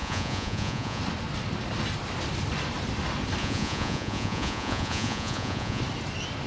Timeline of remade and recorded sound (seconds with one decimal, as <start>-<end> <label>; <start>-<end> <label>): 0.0-1.0 remade; 1.0-3.4 recorded; 3.4-5.8 remade; 5.8-6.5 recorded